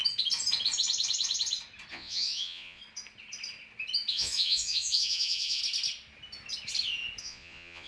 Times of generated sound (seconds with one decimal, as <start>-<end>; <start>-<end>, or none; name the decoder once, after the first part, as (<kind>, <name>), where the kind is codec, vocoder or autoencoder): 1.9-2.8 (vocoder, Vocos); 4.1-5.6; 7.2-7.9